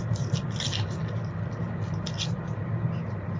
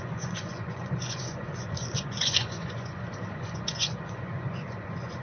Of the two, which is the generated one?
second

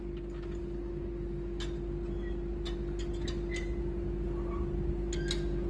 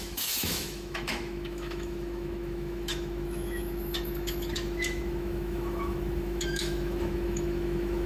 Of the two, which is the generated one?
second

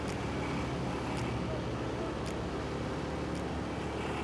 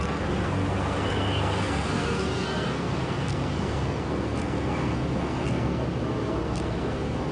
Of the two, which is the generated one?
second